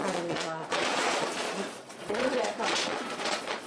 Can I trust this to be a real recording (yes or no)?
no